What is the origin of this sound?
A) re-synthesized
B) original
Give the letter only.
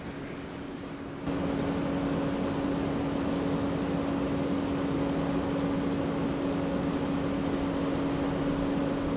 B